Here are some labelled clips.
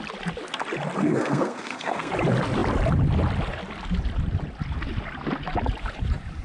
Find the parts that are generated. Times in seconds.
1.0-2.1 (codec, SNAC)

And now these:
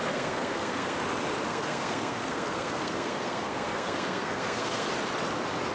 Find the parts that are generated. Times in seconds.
0.0-1.0 (codec, SNAC); 1.5-4.9

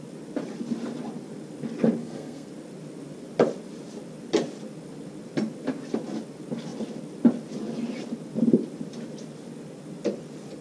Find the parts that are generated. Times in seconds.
2.0-2.5 (codec, SNAC)

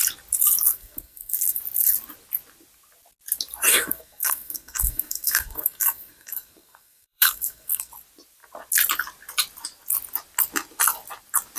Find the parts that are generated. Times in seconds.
0.7-1.6 (codec, SNAC); 3.7-7.9